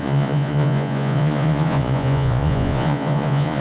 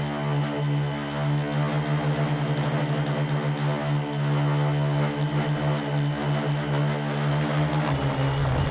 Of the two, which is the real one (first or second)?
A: second